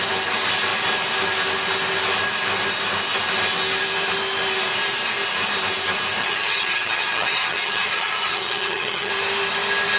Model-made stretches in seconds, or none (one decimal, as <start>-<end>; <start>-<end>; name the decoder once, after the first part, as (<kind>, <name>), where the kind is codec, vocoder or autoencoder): 6.2-9.1 (vocoder, HiFi-GAN)